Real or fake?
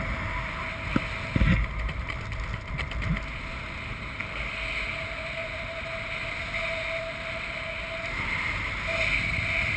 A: real